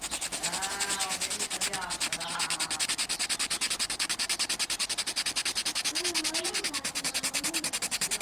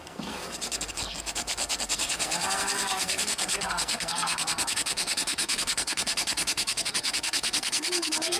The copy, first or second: second